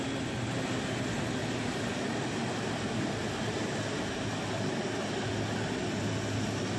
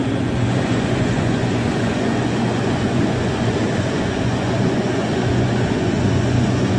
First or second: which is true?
first